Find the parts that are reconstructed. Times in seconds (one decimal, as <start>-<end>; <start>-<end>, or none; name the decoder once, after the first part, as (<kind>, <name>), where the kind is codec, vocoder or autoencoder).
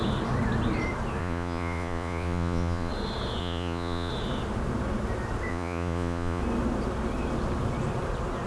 1.2-2.9 (vocoder, Vocos); 3.4-4.1; 5.5-6.4